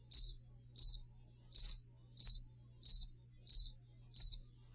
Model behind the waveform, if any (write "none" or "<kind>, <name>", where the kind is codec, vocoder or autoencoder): none